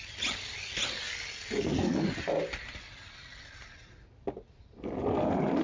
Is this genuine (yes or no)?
yes